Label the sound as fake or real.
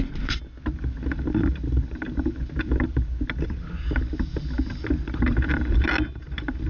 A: real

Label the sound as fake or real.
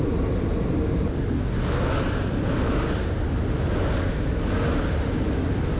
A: real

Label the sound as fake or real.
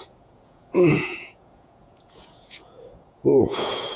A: fake